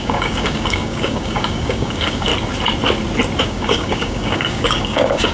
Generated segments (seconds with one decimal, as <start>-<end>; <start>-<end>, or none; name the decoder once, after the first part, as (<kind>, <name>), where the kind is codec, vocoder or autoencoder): 0.0-2.3 (codec, DAC); 3.4-5.3